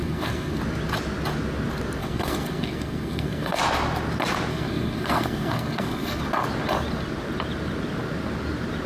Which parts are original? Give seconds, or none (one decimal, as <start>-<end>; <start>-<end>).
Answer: 0.6-2.0; 3.6-4.5; 6.2-8.9